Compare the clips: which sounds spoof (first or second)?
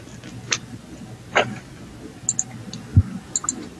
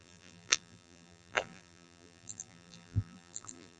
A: second